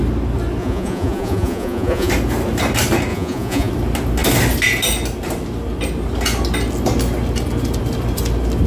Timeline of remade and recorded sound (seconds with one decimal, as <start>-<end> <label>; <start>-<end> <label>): 0.0-0.6 recorded; 0.6-2.1 remade; 2.1-3.1 recorded; 3.1-3.7 remade; 3.7-8.7 recorded